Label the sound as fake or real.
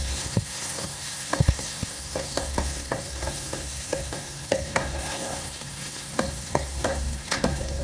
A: fake